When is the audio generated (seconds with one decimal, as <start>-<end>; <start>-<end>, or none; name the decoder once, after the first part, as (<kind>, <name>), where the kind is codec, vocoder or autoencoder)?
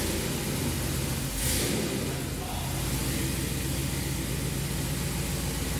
none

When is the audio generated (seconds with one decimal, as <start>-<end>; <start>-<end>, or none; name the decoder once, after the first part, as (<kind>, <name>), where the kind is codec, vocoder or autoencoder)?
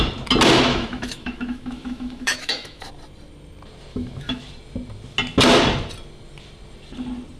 0.7-2.9 (autoencoder, DAC-VAE); 3.9-4.4